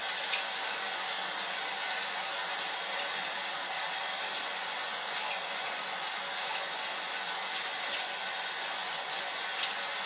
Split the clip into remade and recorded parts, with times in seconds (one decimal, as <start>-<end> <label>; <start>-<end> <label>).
0.0-2.5 remade; 2.5-4.3 recorded; 4.3-10.1 remade